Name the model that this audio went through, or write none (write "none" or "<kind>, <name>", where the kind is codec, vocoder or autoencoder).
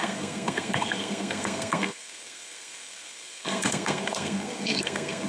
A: codec, SNAC